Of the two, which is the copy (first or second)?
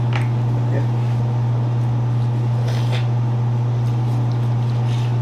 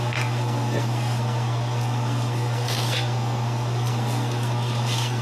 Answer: second